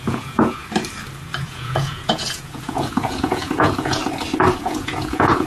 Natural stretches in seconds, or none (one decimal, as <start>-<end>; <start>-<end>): 0.6-1.4; 4.0-4.6